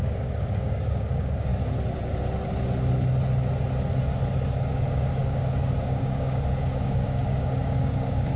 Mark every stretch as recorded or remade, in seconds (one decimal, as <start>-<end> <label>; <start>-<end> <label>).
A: 0.0-1.5 remade; 1.5-4.7 recorded; 4.7-8.4 remade